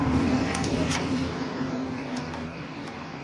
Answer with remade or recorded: remade